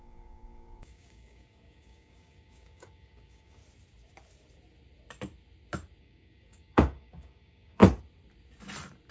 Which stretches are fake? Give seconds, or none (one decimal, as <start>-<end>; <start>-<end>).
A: 0.0-3.6; 6.0-7.8